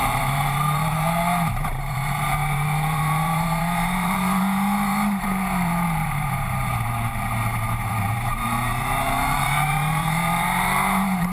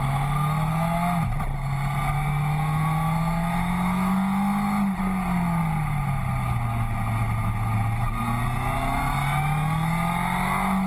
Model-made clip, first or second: first